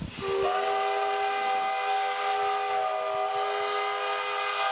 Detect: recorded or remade recorded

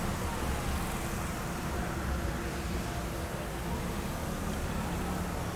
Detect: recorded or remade recorded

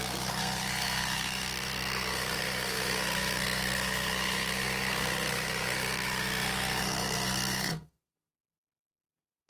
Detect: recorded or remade remade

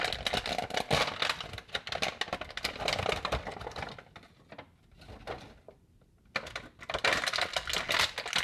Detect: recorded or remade recorded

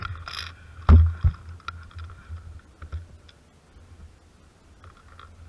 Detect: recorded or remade recorded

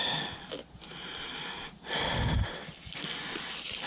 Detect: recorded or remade recorded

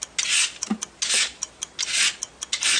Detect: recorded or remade recorded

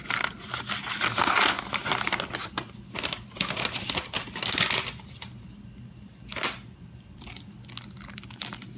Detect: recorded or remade recorded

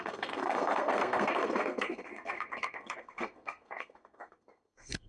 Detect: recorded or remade remade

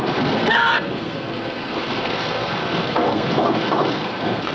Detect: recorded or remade remade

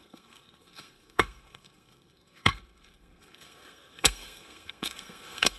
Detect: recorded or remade remade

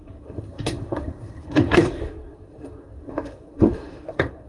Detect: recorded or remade remade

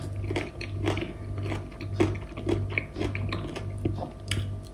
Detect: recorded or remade recorded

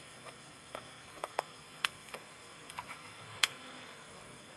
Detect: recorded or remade remade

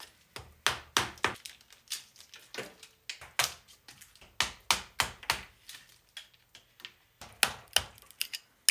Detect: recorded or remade recorded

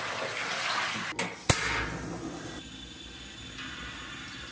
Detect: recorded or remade recorded